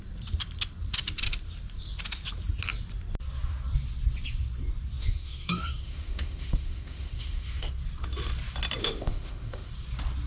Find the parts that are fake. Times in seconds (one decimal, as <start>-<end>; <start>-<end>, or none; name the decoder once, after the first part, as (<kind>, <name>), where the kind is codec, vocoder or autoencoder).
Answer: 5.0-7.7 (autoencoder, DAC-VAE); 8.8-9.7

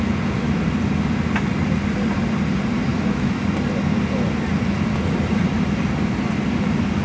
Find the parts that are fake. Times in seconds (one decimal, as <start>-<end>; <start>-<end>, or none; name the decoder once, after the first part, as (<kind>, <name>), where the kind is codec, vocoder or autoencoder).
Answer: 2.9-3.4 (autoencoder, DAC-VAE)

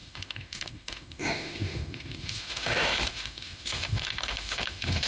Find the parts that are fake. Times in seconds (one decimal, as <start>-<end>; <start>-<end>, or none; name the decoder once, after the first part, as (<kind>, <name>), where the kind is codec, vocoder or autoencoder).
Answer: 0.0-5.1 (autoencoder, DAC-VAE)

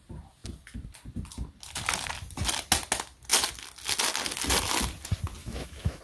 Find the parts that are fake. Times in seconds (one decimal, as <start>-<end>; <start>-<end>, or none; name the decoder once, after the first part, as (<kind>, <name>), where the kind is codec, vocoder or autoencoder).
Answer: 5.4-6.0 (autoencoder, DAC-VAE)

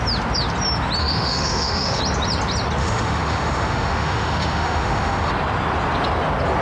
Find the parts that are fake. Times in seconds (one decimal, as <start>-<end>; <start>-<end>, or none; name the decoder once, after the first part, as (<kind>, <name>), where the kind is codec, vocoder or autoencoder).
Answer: 1.0-2.0 (autoencoder, DAC-VAE); 2.8-5.3

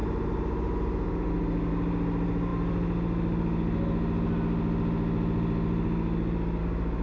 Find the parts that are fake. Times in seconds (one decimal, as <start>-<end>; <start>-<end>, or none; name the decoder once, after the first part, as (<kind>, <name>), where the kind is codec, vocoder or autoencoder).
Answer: none

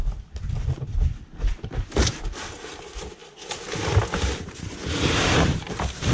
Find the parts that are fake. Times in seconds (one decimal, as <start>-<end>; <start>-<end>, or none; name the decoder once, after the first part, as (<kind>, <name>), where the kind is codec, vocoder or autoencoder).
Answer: none